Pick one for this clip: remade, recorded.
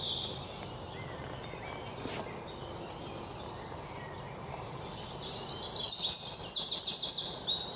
recorded